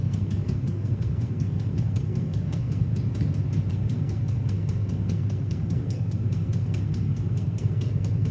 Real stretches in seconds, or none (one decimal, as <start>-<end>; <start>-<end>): 2.9-3.7